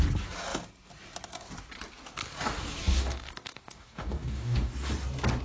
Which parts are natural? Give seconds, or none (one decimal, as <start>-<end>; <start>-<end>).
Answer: 0.0-2.8; 4.7-5.4